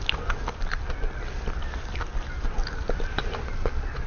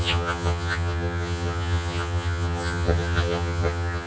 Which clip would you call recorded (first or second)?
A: first